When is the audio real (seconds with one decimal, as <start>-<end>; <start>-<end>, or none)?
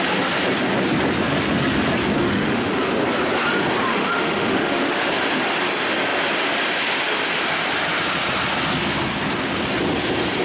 0.0-2.2; 2.7-3.9; 5.1-10.4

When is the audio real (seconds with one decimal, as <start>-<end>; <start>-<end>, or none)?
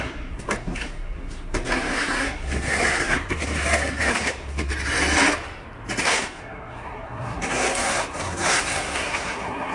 4.7-6.0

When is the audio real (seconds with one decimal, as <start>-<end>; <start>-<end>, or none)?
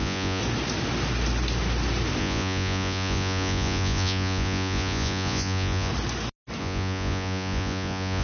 0.4-2.2; 5.9-6.6